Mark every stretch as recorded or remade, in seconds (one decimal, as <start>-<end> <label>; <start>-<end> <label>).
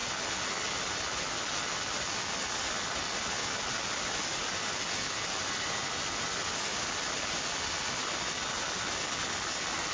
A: 0.0-9.9 recorded